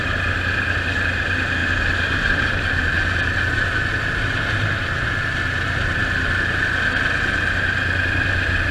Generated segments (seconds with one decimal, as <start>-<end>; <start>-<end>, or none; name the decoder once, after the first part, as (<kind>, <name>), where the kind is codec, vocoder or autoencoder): none

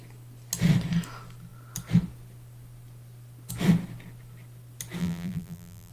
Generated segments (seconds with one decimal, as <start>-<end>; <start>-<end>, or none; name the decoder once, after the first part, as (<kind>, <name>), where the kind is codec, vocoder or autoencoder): 5.0-5.9 (vocoder, BigVGAN v2)

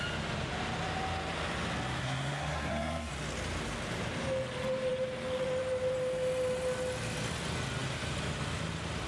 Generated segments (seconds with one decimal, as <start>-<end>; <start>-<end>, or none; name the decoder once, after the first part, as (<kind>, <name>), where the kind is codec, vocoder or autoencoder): 2.0-3.1 (codec, SNAC)

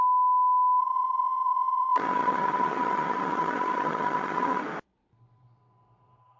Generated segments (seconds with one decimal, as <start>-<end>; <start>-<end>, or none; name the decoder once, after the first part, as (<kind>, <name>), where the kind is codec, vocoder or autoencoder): 0.8-4.6 (vocoder, HiFi-GAN)